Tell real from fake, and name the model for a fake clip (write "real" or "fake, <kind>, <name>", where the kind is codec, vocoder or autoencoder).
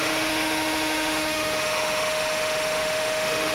fake, autoencoder, DAC-VAE